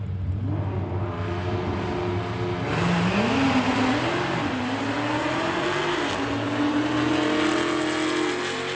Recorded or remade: recorded